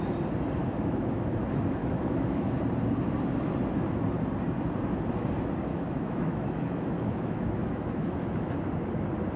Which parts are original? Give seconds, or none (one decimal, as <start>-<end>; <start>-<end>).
0.0-0.6; 1.4-1.8; 2.5-5.7; 8.5-9.4